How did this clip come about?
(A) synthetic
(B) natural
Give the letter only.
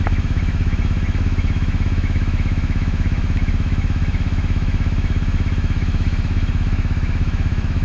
A